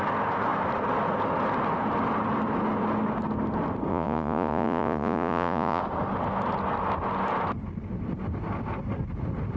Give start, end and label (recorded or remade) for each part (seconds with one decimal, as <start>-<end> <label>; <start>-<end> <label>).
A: 0.0-3.9 recorded; 3.9-5.8 remade; 5.8-9.6 recorded

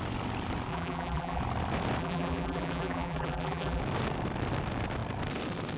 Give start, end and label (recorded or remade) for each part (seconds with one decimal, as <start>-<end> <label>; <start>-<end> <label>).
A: 0.0-0.7 recorded; 0.7-1.4 remade; 1.4-2.0 recorded; 2.0-3.8 remade; 3.8-5.8 recorded

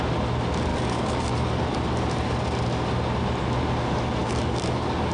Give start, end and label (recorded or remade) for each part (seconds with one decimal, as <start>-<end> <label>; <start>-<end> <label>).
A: 0.0-0.7 recorded; 0.7-1.6 remade; 1.6-4.2 recorded; 4.2-5.1 remade

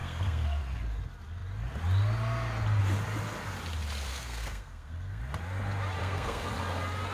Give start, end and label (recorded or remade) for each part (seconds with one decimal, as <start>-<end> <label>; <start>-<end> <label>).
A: 0.0-0.6 remade; 0.6-4.1 recorded; 4.1-5.2 remade; 5.2-6.0 recorded; 6.0-6.5 remade; 6.5-7.1 recorded